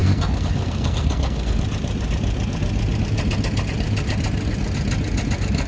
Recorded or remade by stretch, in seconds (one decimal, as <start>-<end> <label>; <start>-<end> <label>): 0.0-1.6 remade; 1.6-5.7 recorded